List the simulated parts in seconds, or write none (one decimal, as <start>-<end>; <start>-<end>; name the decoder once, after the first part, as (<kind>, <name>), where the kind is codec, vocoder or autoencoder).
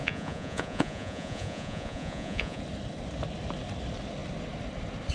0.0-2.6 (vocoder, Vocos)